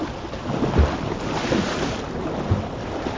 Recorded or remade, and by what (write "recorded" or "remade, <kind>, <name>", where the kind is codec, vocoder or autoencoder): recorded